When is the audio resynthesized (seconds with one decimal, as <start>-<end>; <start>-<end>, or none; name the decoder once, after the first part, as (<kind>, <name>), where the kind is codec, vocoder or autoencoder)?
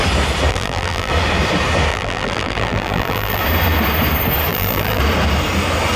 0.5-1.1 (vocoder, BigVGAN v2); 1.9-3.4; 4.5-5.0